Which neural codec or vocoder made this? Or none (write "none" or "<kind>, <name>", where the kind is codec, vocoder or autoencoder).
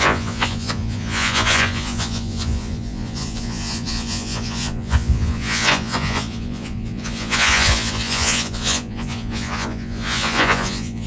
vocoder, Vocos